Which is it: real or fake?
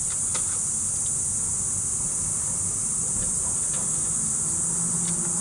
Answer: real